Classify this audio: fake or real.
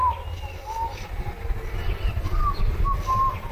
real